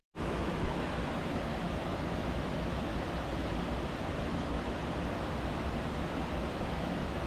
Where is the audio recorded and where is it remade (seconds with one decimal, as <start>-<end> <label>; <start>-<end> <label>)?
0.0-2.9 remade; 2.9-4.2 recorded; 4.2-4.8 remade; 4.8-6.7 recorded; 6.7-7.3 remade